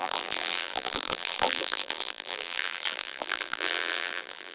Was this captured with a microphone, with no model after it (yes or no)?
no